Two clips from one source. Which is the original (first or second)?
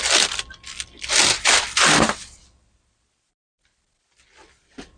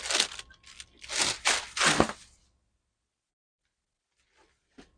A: second